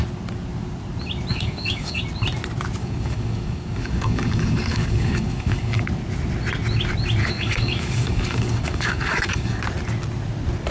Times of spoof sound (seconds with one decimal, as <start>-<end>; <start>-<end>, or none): 1.3-2.0; 2.8-5.8; 7.2-9.6

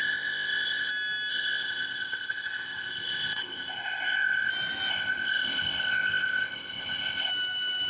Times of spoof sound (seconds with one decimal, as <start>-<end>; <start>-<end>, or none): 0.0-0.9; 1.3-4.5; 4.9-7.3

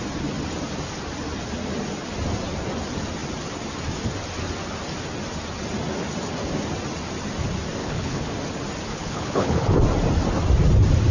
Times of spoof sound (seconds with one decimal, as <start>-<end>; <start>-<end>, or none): 7.8-8.3; 8.9-9.8